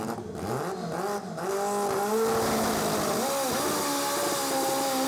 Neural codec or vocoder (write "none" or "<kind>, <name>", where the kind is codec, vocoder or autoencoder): none